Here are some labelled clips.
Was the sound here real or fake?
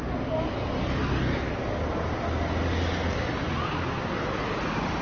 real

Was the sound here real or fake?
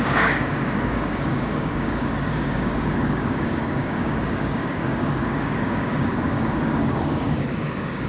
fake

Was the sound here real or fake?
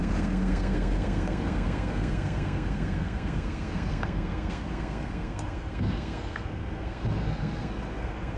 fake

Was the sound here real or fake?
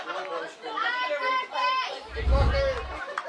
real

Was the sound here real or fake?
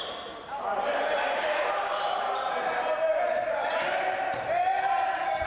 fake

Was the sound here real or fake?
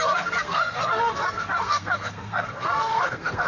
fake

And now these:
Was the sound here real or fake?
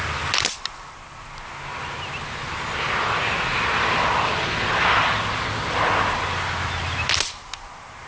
real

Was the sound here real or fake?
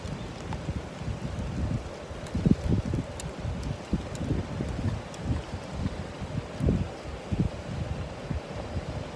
real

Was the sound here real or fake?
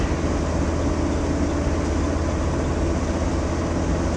real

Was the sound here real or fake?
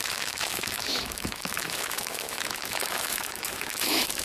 fake